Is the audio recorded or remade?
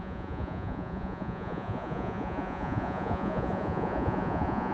remade